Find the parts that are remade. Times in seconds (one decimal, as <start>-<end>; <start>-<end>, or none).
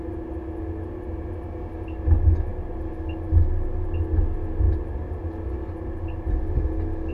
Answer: none